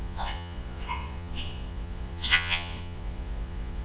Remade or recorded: remade